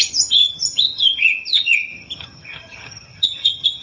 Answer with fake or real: fake